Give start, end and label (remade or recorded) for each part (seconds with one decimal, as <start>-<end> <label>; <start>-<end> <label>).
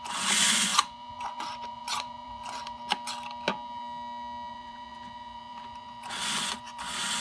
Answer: 0.0-2.8 remade; 2.8-4.5 recorded; 4.5-7.2 remade